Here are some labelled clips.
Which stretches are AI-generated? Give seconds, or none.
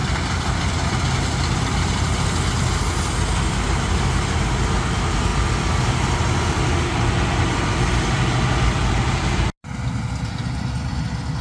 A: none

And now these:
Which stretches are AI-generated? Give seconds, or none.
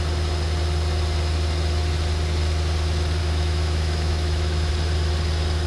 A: 3.2-4.7 (autoencoder, DAC-VAE)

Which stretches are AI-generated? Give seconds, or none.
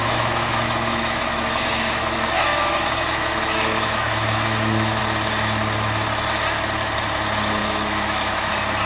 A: 0.0-5.0 (autoencoder, DAC-VAE); 7.6-8.5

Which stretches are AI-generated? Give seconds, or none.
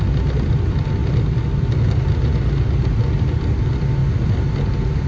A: none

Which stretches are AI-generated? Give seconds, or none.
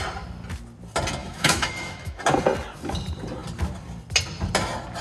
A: 1.2-2.2 (autoencoder, DAC-VAE)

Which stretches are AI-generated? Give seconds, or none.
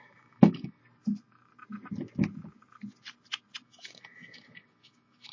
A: 0.0-0.8 (autoencoder, DAC-VAE); 3.6-5.3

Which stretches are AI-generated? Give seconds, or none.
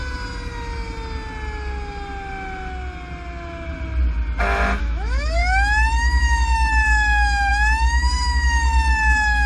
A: 4.8-9.5 (autoencoder, DAC-VAE)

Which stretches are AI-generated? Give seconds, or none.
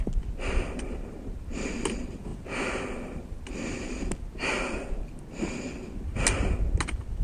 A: none